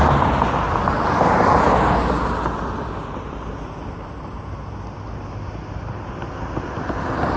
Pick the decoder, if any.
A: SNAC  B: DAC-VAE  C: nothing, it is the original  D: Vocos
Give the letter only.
C